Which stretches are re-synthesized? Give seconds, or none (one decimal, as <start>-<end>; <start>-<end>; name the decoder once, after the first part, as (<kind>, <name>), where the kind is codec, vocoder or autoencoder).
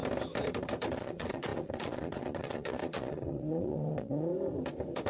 0.9-4.3 (vocoder, Vocos)